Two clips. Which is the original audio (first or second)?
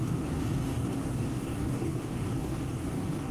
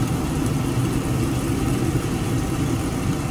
second